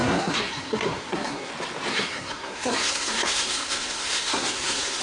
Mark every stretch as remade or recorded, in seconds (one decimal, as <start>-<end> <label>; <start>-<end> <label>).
0.0-1.5 remade; 1.5-1.9 recorded; 1.9-5.0 remade